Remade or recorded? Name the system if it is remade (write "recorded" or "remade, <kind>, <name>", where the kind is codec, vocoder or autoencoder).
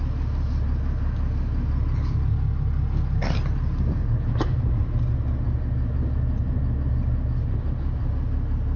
recorded